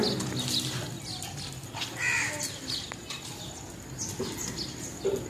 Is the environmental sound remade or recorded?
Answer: recorded